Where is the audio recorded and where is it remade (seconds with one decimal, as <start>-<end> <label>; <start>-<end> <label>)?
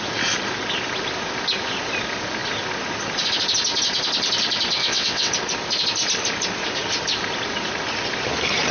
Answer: 0.0-4.8 recorded; 4.8-5.3 remade; 5.3-8.7 recorded